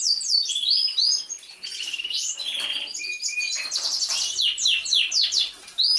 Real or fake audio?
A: real